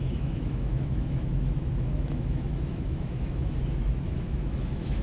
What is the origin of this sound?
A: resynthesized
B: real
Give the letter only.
A